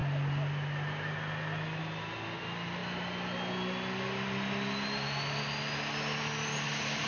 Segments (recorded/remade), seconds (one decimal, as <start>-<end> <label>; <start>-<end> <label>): 0.0-7.1 recorded